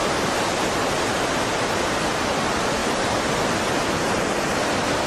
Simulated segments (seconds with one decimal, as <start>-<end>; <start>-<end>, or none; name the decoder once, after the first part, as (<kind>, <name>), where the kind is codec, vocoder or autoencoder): 1.1-2.2 (vocoder, BigVGAN v2); 2.8-3.4